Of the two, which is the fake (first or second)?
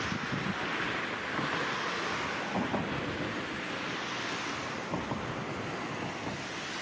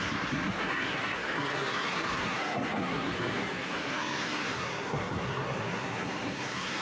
second